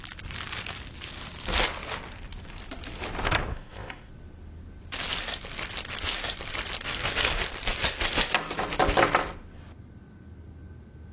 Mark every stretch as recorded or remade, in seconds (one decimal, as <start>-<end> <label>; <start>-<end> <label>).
0.0-3.5 recorded; 3.5-4.1 remade; 4.1-11.1 recorded

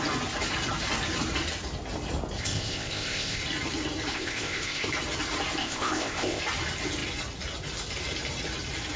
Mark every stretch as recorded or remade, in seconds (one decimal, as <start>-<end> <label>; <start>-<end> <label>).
0.0-2.4 recorded; 2.4-3.4 remade; 3.4-4.1 recorded; 4.1-4.9 remade; 4.9-5.6 recorded; 5.6-6.4 remade; 6.4-9.0 recorded

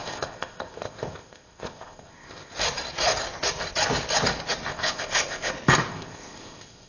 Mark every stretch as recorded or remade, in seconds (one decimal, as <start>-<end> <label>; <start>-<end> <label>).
0.0-2.5 remade; 2.5-4.7 recorded; 4.7-5.5 remade; 5.5-5.9 recorded; 5.9-6.9 remade

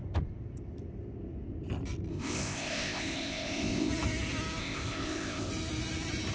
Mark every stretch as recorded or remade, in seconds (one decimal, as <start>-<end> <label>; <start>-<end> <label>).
0.0-2.1 recorded; 2.1-3.9 remade; 3.9-4.6 recorded; 4.6-5.5 remade; 5.5-6.3 recorded

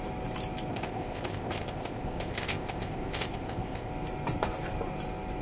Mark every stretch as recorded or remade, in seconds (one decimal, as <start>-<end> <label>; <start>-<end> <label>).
0.0-0.7 recorded; 0.7-3.9 remade; 3.9-5.4 recorded

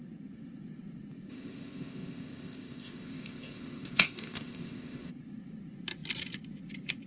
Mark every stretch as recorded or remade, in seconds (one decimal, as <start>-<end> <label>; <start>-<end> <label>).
0.0-1.3 recorded; 1.3-5.1 remade; 5.1-7.1 recorded